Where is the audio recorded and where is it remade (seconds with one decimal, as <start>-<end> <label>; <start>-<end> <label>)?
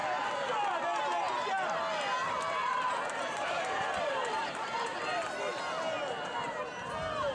0.0-2.2 recorded; 2.2-5.0 remade; 5.0-7.3 recorded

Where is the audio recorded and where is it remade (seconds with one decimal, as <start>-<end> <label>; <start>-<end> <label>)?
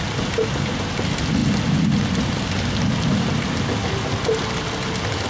0.0-5.3 recorded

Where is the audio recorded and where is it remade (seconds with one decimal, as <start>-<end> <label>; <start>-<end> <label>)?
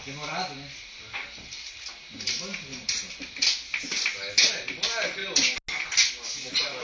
0.0-6.8 recorded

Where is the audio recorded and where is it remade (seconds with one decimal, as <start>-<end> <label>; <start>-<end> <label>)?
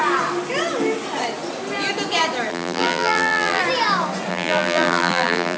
0.0-2.5 recorded; 2.5-3.6 remade; 3.6-4.3 recorded; 4.3-5.6 remade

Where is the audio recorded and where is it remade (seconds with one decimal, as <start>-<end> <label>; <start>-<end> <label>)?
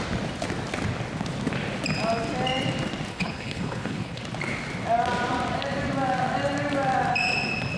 0.0-3.1 recorded; 3.1-4.2 remade; 4.2-7.8 recorded